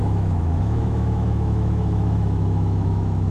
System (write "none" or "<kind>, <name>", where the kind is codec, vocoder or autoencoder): autoencoder, DAC-VAE